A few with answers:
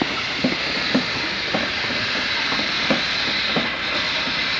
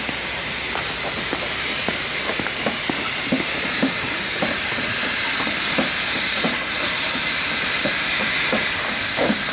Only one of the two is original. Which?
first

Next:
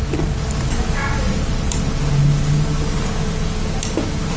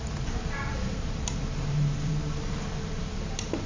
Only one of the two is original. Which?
first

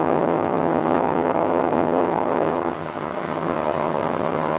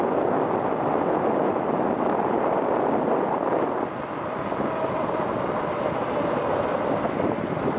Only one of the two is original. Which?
second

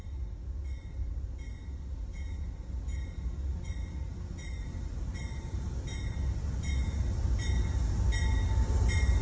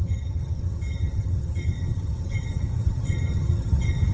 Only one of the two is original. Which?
first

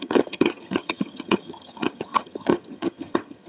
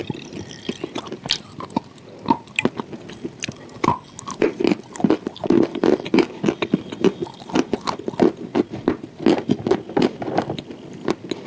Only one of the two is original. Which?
second